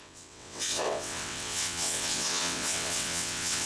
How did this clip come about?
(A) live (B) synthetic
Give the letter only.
B